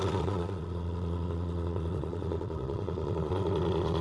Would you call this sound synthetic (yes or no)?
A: yes